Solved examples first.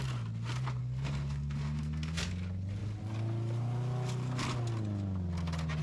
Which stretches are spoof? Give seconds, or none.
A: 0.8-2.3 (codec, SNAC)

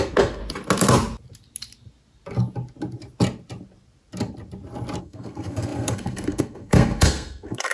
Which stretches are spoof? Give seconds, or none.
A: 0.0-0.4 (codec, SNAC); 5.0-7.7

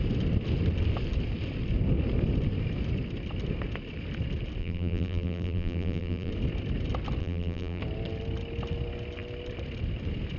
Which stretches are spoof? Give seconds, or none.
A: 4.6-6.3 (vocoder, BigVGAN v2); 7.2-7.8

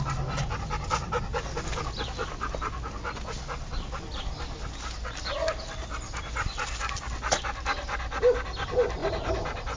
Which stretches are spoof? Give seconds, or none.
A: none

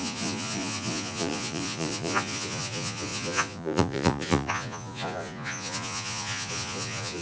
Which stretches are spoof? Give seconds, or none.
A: 0.0-7.2 (vocoder, Vocos)

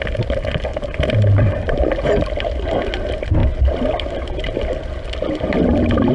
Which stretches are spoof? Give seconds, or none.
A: none

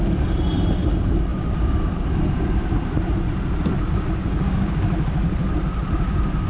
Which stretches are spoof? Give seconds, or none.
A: 4.2-4.7 (codec, DAC)